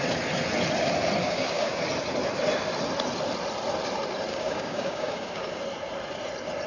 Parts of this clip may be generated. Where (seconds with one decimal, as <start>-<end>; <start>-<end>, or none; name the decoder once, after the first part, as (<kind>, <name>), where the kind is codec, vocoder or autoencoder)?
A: 1.2-1.8 (codec, DAC); 4.3-5.6